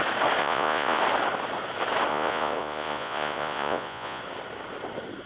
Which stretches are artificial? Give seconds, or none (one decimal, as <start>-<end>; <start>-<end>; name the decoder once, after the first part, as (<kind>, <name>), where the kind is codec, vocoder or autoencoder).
0.4-1.0 (vocoder, Vocos); 2.1-4.2